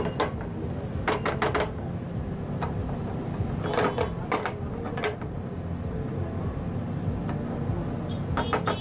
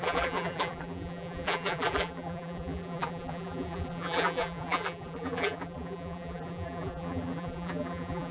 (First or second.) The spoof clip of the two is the second